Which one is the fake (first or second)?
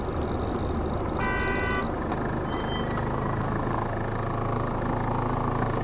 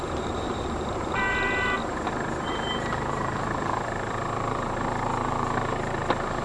second